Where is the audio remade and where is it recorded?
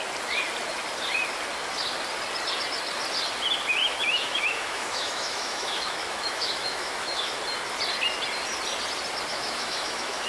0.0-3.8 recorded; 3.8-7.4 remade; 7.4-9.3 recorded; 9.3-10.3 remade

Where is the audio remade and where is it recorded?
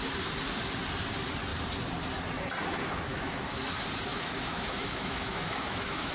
0.0-3.1 recorded; 3.1-3.6 remade; 3.6-4.1 recorded; 4.1-6.1 remade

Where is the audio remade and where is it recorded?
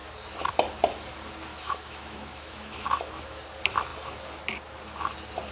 0.0-1.5 recorded; 1.5-3.4 remade; 3.4-5.5 recorded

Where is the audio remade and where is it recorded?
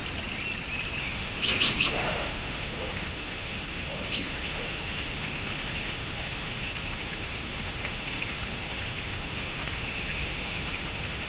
0.0-1.0 recorded; 1.0-11.3 remade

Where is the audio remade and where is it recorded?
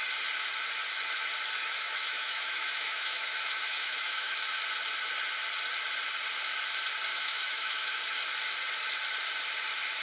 0.0-1.6 recorded; 1.6-4.6 remade; 4.6-7.1 recorded; 7.1-8.0 remade; 8.0-10.0 recorded